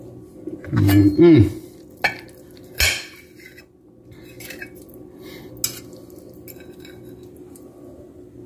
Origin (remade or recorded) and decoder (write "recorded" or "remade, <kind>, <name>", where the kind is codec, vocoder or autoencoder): recorded